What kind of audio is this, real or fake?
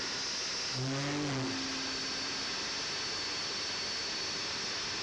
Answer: real